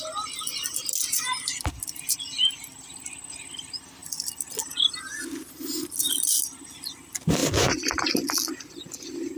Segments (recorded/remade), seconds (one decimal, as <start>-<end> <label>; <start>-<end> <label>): 0.0-9.4 recorded